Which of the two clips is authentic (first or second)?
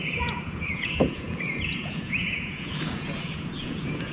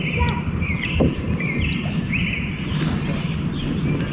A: second